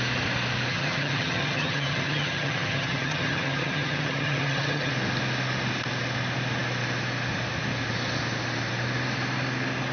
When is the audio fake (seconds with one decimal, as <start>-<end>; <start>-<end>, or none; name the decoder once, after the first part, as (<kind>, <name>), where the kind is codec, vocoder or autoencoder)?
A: 0.7-4.9 (vocoder, HiFi-GAN)